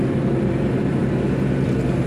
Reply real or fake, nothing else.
real